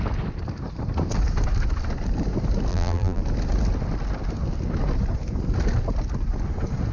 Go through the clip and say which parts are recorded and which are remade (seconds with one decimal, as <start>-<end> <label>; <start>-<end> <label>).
0.0-2.7 recorded; 2.7-3.2 remade; 3.2-6.9 recorded